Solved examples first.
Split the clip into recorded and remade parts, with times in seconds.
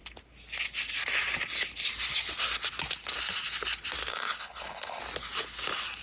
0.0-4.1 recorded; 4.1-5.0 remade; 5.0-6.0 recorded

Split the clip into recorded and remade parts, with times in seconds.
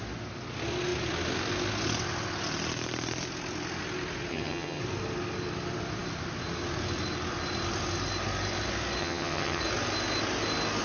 0.0-4.3 recorded; 4.3-4.8 remade; 4.8-9.0 recorded; 9.0-9.6 remade; 9.6-10.8 recorded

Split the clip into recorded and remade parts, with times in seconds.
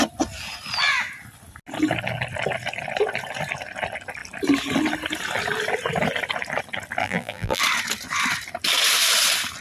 0.0-7.0 recorded; 7.0-7.6 remade; 7.6-9.6 recorded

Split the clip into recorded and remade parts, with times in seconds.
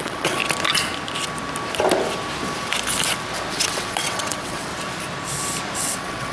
0.0-0.4 remade; 0.4-3.5 recorded; 3.5-4.7 remade; 4.7-5.8 recorded; 5.8-6.3 remade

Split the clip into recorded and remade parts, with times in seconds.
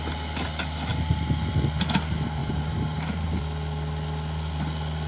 0.0-2.4 recorded; 2.4-3.4 remade; 3.4-5.1 recorded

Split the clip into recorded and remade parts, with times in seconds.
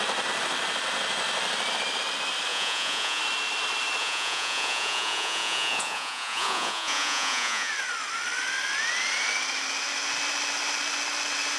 0.0-2.5 recorded; 2.5-3.2 remade; 3.2-4.0 recorded; 4.0-7.7 remade; 7.7-11.6 recorded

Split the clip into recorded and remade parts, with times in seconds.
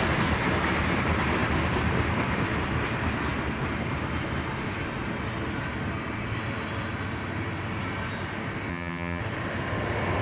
0.0-8.7 recorded; 8.7-9.2 remade; 9.2-10.2 recorded